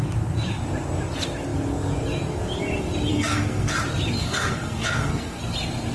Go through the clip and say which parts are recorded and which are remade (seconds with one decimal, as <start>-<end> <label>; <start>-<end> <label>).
0.0-3.1 recorded; 3.1-3.8 remade; 3.8-4.2 recorded; 4.2-5.4 remade; 5.4-5.9 recorded